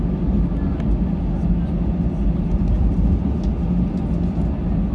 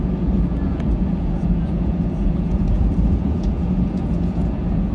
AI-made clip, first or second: second